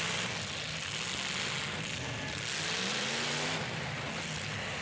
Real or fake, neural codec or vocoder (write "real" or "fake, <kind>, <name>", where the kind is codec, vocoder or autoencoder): real